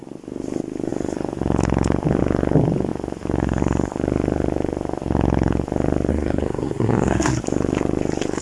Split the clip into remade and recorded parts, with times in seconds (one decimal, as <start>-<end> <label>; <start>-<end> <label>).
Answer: 0.0-6.1 recorded; 6.1-7.4 remade; 7.4-8.4 recorded